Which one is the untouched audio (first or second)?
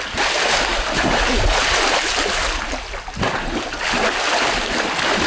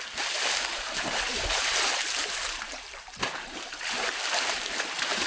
first